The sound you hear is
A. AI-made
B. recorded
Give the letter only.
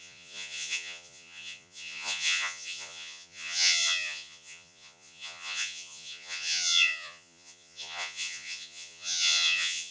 A